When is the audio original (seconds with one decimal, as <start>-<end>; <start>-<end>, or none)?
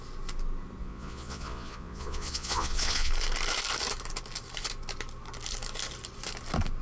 0.0-0.8; 3.1-6.8